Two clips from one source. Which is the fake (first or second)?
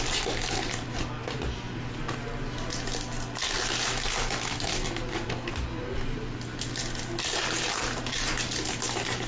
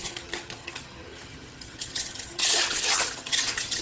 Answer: second